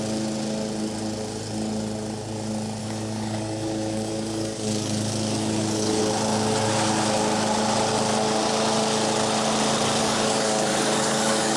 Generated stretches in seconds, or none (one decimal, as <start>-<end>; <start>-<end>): 2.8-6.0; 10.0-11.6